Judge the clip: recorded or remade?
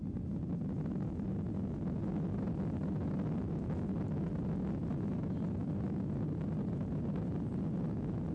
recorded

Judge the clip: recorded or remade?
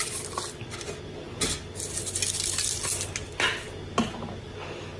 recorded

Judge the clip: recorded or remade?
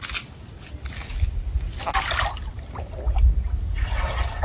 recorded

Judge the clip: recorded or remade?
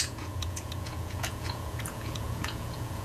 remade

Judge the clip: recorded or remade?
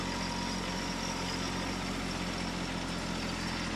recorded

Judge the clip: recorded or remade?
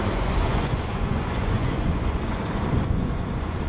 remade